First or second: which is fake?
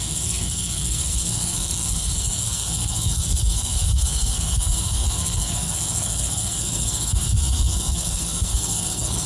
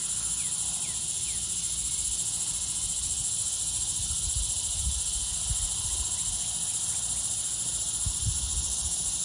first